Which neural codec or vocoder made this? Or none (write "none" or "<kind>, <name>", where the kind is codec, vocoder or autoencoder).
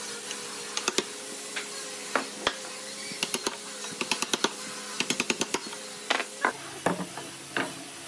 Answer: none